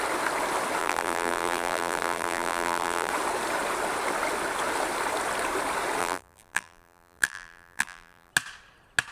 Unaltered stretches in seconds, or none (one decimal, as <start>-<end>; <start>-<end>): 0.0-0.8; 3.1-6.0; 8.3-9.1